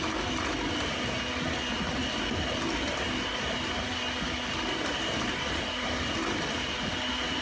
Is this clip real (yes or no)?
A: yes